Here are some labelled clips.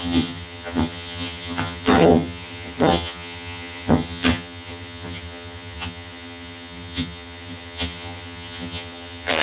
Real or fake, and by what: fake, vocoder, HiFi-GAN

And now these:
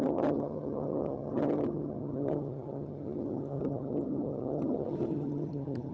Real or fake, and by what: fake, vocoder, HiFi-GAN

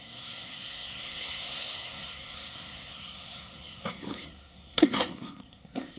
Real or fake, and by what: fake, codec, SNAC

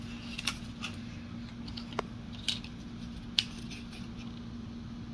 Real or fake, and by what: real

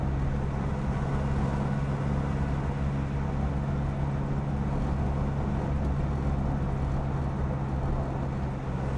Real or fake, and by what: real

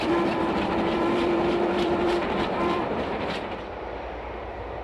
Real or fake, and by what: fake, vocoder, BigVGAN v2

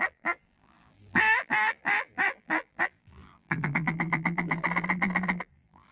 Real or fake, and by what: fake, vocoder, BigVGAN v2